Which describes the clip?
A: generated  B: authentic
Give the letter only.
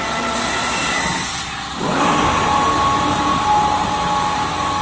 B